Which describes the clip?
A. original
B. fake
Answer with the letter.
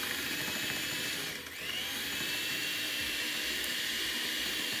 B